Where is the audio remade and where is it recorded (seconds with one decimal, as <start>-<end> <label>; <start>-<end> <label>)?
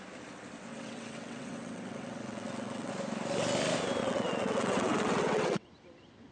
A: 0.0-0.7 recorded; 0.7-2.9 remade; 2.9-4.0 recorded; 4.0-5.7 remade; 5.7-6.3 recorded